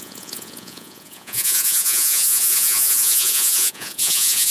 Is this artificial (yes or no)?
yes